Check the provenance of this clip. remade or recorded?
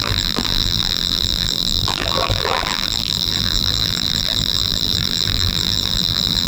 remade